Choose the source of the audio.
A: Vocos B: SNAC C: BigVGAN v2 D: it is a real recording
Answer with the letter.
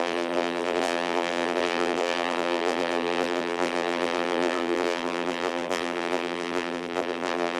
C